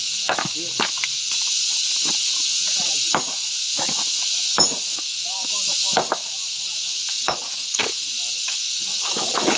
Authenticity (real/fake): fake